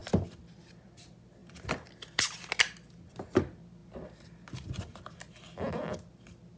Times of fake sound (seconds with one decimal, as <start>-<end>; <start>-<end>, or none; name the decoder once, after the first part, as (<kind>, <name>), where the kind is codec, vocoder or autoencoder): 1.4-2.1 (vocoder, BigVGAN v2)